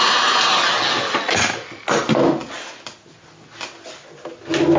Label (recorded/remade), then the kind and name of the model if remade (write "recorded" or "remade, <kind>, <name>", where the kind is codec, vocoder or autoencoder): recorded